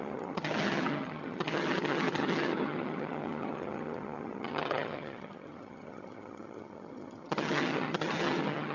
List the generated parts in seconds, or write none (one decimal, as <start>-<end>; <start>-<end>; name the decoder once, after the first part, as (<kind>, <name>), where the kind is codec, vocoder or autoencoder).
0.0-8.7 (vocoder, HiFi-GAN)